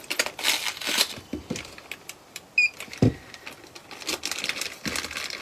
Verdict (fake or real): real